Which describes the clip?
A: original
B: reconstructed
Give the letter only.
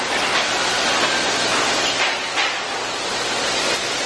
A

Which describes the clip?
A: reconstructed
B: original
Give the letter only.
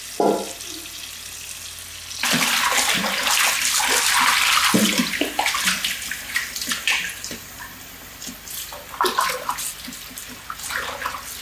B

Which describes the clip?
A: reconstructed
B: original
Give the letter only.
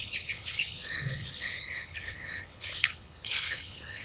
A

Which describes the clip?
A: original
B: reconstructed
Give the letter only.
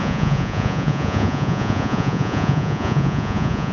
B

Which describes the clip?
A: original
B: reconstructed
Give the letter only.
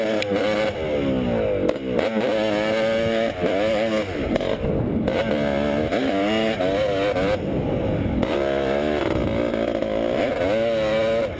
A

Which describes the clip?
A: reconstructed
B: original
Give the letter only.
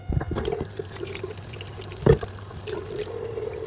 B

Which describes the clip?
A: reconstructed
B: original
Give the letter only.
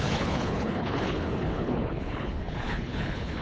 A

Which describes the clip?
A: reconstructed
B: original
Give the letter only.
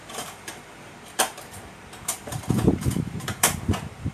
A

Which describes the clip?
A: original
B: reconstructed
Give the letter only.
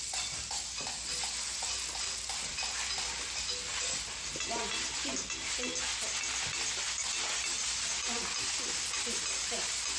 A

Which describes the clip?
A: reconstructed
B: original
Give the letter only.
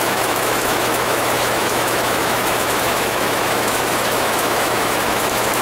A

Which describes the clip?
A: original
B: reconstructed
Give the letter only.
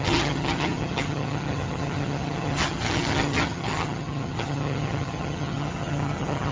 B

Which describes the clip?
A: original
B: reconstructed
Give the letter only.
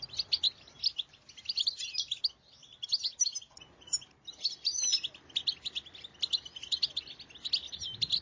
A